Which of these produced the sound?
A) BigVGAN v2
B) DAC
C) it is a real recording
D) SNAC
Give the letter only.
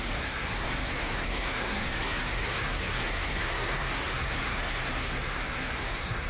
D